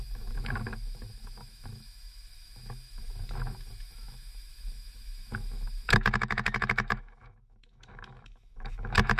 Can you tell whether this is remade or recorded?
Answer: remade